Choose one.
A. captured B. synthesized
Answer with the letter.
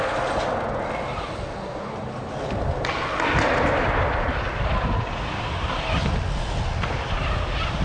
A